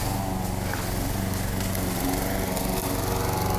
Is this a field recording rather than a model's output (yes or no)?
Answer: yes